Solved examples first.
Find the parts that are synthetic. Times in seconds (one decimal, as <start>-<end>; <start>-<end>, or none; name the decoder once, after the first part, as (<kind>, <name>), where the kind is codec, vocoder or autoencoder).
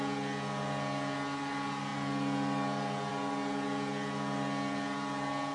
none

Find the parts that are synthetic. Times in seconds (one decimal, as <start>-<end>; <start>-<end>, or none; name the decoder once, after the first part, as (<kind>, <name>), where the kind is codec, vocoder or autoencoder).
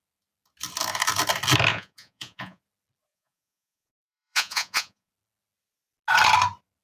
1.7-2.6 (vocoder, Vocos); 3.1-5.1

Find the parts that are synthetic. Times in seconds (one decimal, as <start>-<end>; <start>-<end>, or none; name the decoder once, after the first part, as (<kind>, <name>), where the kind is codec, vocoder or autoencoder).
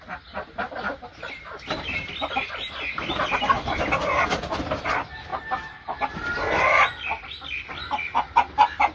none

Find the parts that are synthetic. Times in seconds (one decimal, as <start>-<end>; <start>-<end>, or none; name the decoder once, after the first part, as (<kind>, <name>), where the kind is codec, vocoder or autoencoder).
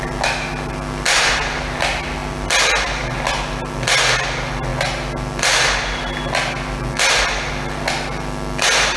none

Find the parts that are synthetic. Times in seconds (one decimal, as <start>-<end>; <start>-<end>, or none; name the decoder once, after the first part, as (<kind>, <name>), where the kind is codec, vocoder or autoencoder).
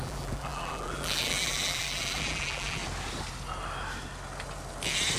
0.0-2.8 (vocoder, BigVGAN v2)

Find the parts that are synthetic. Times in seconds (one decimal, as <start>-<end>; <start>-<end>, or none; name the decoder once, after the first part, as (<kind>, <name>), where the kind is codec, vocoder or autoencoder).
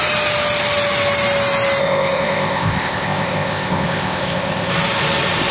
1.8-4.7 (codec, ZipCodec)